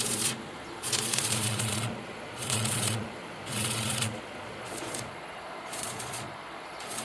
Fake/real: fake